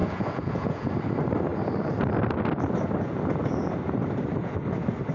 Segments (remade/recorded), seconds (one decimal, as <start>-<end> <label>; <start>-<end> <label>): 0.0-0.9 remade; 0.9-5.1 recorded